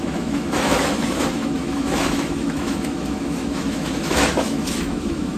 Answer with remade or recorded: remade